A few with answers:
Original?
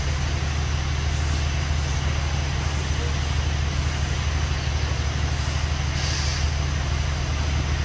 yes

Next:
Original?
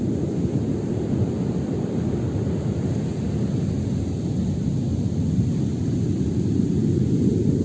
yes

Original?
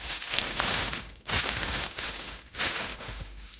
no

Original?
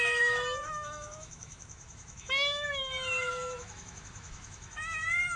no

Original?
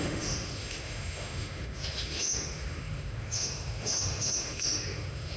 no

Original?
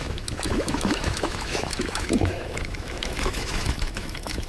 no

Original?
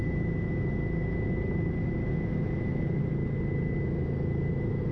yes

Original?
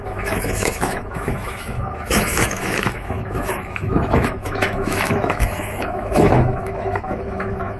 no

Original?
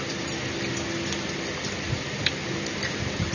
yes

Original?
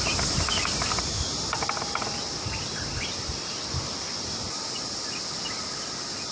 yes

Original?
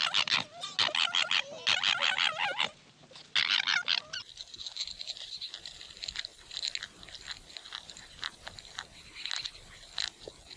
yes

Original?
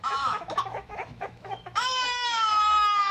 no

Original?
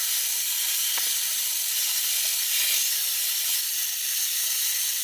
yes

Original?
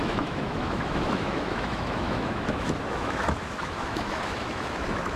no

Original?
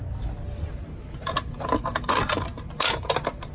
yes